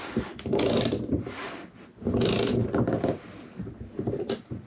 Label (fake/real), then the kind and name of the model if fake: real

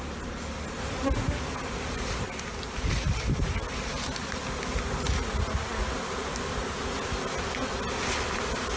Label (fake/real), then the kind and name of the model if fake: real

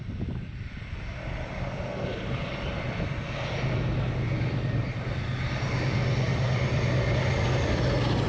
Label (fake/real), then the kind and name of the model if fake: real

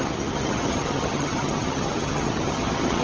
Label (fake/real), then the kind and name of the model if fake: fake, vocoder, HiFi-GAN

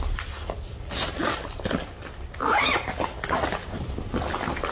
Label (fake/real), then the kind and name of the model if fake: real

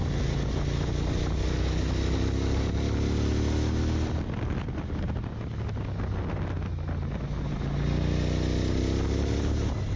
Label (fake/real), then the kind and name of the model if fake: real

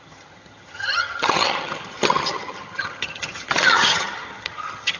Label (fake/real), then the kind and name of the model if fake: fake, vocoder, HiFi-GAN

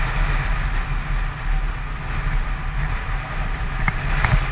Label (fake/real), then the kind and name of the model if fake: real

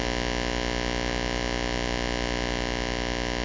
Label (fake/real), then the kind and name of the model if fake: real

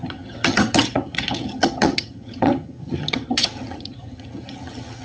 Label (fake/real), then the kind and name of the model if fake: fake, vocoder, HiFi-GAN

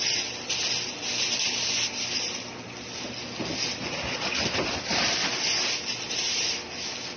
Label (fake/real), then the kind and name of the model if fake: real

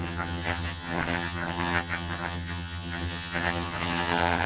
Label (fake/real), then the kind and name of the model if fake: fake, vocoder, HiFi-GAN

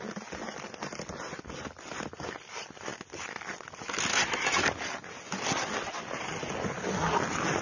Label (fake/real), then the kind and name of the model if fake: real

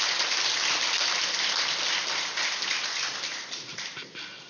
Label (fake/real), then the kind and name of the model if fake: real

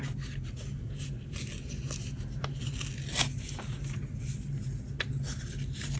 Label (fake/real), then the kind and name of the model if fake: real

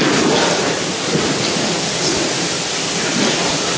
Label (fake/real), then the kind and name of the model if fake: real